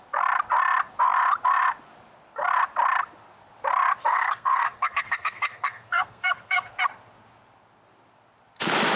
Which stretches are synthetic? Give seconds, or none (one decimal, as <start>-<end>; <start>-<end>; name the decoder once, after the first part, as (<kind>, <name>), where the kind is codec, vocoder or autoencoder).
4.1-6.8 (codec, SNAC)